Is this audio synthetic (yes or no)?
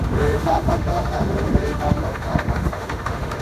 yes